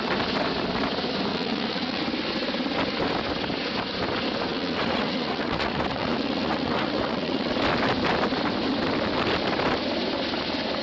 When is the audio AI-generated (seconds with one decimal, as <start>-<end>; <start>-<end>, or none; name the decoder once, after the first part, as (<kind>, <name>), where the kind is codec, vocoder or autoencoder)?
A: 1.3-2.0 (vocoder, Vocos); 4.5-7.5